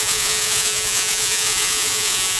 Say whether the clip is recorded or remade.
remade